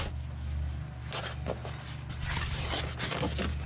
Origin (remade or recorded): recorded